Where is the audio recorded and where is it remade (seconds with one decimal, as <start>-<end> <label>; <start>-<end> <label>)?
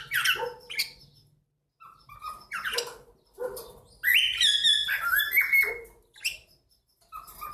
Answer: 0.0-7.5 recorded